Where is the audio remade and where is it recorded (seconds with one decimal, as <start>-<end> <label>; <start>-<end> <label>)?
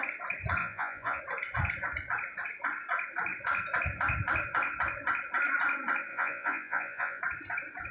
0.0-0.6 recorded; 0.6-1.2 remade; 1.2-6.1 recorded; 6.1-7.2 remade; 7.2-7.9 recorded